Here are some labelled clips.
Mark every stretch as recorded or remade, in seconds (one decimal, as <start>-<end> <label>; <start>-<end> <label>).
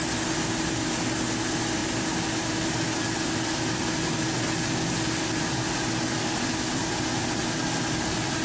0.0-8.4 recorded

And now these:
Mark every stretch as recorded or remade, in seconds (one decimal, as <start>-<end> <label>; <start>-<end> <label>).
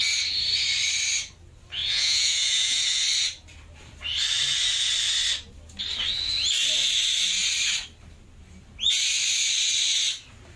0.0-1.8 recorded; 1.8-3.0 remade; 3.0-10.6 recorded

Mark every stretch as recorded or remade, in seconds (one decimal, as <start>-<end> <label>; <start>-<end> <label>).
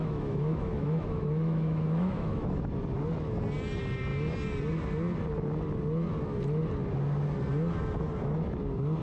0.0-2.6 remade; 2.6-9.0 recorded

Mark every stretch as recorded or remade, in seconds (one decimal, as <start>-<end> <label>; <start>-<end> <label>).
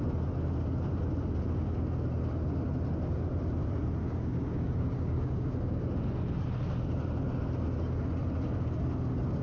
0.0-4.0 recorded; 4.0-5.8 remade; 5.8-9.4 recorded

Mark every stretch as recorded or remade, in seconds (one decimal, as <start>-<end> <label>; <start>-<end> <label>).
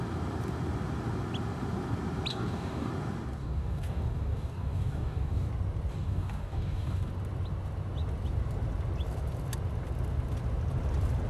0.0-2.3 recorded; 2.3-2.9 remade; 2.9-3.4 recorded; 3.4-5.5 remade; 5.5-5.9 recorded; 5.9-7.1 remade; 7.1-11.3 recorded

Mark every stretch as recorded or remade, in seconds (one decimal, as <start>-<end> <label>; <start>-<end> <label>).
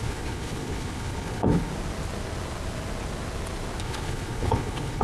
0.0-1.7 remade; 1.7-3.8 recorded; 3.8-5.0 remade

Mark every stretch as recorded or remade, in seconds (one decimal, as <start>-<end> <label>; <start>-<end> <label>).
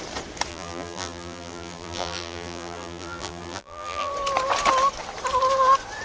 0.0-0.5 recorded; 0.5-4.1 remade; 4.1-6.0 recorded